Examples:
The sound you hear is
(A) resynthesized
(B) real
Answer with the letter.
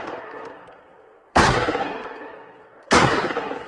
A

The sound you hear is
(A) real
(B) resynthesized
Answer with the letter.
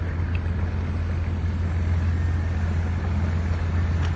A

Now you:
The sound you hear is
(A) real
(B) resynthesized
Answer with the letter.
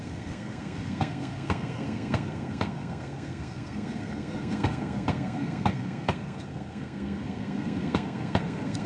B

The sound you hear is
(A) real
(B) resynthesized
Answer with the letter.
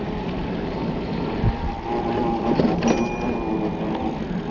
A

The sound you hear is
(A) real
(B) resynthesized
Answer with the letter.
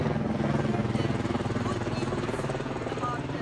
A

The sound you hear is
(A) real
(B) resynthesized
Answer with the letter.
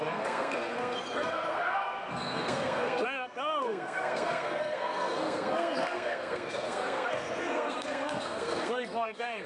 B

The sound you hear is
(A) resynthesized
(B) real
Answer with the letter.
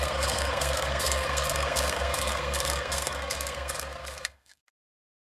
A